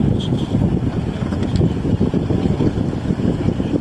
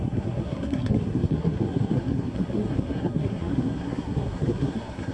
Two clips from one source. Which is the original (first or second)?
first